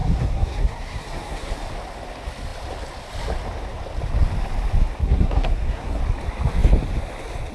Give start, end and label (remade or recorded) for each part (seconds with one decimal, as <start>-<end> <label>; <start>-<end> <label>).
0.0-1.5 remade; 1.5-5.0 recorded; 5.0-6.0 remade; 6.0-7.5 recorded